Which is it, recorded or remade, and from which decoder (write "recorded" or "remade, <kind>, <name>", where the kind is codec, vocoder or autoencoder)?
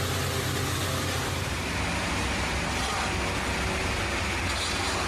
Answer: recorded